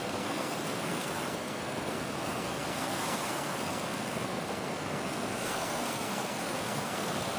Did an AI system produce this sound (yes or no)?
yes